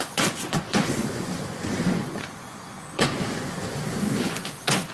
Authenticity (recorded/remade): remade